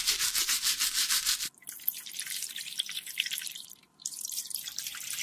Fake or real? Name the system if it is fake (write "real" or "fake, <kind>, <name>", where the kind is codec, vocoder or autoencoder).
fake, vocoder, BigVGAN v2